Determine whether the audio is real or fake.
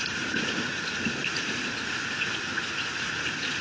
fake